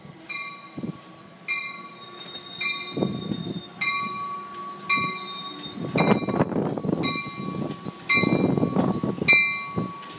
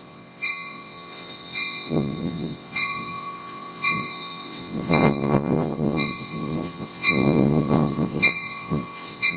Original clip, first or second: first